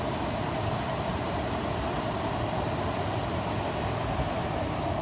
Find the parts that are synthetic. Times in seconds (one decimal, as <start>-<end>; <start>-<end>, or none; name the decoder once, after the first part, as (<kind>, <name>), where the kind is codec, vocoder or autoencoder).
1.1-2.9 (vocoder, BigVGAN v2)